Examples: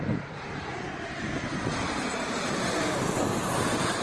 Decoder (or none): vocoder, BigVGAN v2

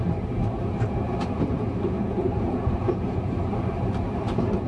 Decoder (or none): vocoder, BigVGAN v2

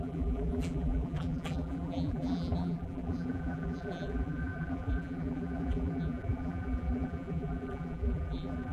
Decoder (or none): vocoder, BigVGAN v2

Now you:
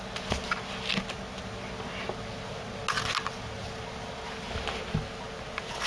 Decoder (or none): none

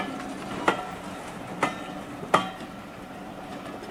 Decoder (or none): none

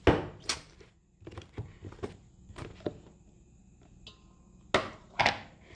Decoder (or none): none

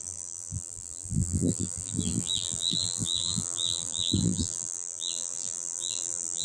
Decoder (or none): vocoder, BigVGAN v2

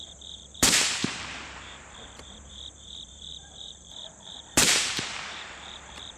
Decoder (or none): vocoder, BigVGAN v2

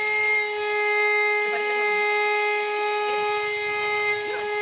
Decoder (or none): none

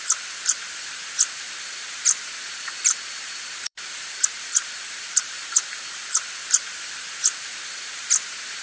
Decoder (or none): vocoder, BigVGAN v2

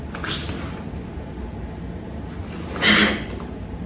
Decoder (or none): none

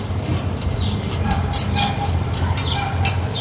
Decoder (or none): vocoder, BigVGAN v2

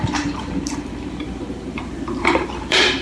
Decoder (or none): vocoder, BigVGAN v2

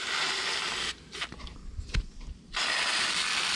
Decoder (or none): vocoder, BigVGAN v2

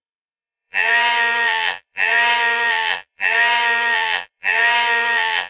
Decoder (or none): vocoder, BigVGAN v2